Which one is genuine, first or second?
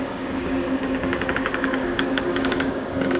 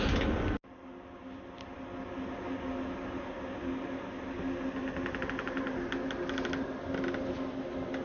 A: second